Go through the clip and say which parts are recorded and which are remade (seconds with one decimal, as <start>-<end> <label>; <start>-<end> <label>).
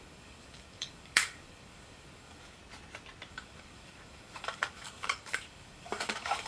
0.0-2.6 remade; 2.6-3.3 recorded; 3.3-6.5 remade